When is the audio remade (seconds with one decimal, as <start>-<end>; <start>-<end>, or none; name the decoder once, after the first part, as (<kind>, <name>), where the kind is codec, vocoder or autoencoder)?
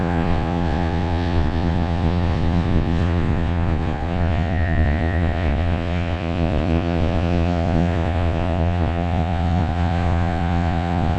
0.0-11.2 (vocoder, Vocos)